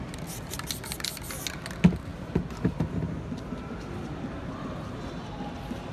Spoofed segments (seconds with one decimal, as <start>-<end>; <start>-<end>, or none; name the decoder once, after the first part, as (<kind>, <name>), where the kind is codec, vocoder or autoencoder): none